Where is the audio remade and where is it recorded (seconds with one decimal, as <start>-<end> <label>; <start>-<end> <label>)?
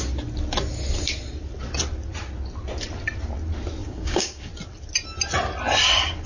0.0-3.8 recorded; 3.8-4.5 remade; 4.5-6.3 recorded